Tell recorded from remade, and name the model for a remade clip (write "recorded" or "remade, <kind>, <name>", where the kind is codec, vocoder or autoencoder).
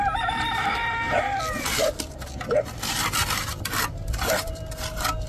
remade, vocoder, BigVGAN v2